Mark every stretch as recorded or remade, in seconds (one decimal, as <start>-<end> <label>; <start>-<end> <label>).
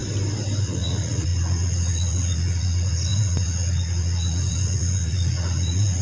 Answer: 0.0-0.6 recorded; 0.6-6.0 remade